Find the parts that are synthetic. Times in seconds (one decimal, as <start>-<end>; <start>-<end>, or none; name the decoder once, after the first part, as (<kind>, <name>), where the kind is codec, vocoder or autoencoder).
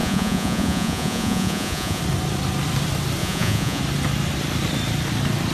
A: 0.0-2.0 (vocoder, Vocos); 3.2-3.8